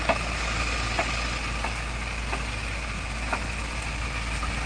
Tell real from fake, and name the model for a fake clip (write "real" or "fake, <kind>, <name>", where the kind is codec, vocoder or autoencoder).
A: real